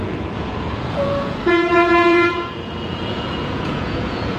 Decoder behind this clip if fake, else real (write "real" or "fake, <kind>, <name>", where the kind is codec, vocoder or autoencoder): fake, vocoder, Vocos